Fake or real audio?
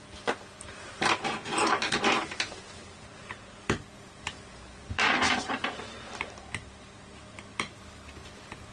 fake